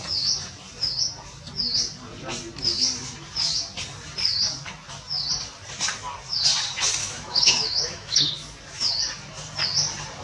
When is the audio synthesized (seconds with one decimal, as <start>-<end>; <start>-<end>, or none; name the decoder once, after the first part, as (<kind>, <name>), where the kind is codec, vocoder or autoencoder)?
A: 7.0-8.3 (autoencoder, DAC-VAE)